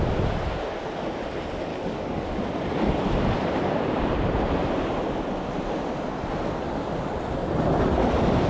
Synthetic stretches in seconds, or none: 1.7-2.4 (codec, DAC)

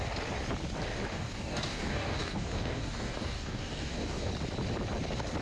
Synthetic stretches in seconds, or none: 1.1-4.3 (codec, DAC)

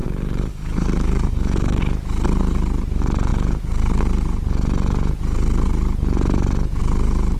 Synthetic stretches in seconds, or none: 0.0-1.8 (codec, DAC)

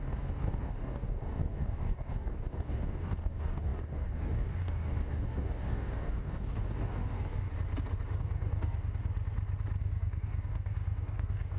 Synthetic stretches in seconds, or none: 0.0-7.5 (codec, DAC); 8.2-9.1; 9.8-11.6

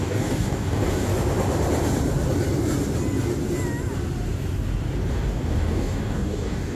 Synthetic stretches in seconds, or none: 0.0-1.1 (codec, DAC); 5.1-6.7

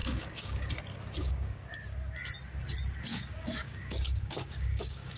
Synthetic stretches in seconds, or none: 0.0-0.7 (codec, DAC); 1.2-1.7; 3.1-5.2